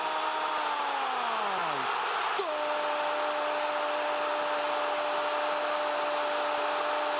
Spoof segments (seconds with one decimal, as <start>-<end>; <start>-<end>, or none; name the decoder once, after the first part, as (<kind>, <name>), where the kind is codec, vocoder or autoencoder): none